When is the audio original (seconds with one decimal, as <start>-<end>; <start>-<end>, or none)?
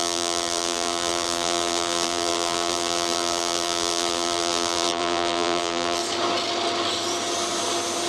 6.0-8.1